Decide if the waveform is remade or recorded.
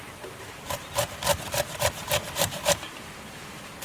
remade